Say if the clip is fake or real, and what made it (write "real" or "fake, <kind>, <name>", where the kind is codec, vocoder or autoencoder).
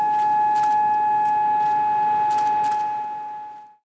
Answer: real